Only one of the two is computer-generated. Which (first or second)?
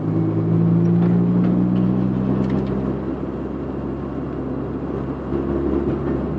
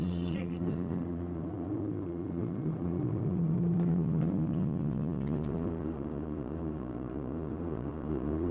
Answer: second